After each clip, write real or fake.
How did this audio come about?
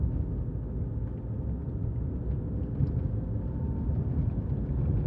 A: real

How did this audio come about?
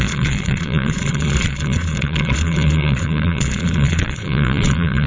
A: fake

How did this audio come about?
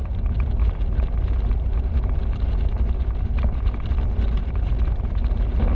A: real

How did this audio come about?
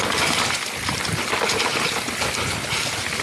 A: real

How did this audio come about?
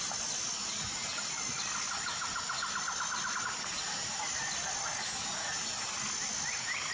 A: real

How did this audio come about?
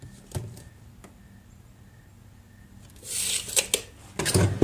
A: real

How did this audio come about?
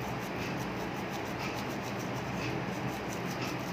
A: real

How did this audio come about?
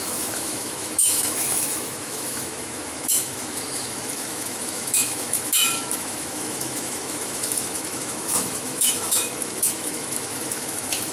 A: fake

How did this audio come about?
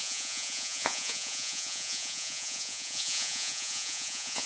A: fake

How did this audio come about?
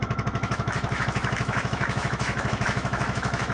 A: fake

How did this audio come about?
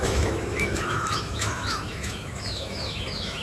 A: fake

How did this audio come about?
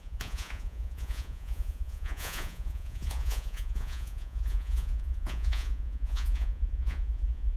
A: fake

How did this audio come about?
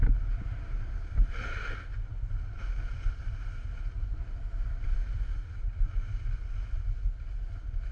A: real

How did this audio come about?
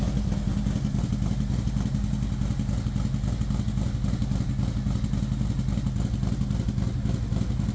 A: real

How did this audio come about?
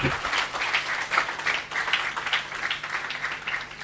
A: real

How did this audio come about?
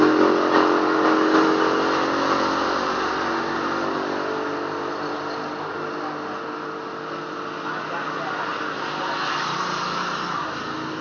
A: real